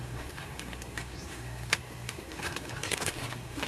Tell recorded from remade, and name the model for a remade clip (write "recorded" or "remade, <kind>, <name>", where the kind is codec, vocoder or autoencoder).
remade, codec, SNAC